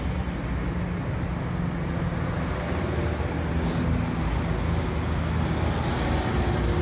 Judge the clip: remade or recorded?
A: recorded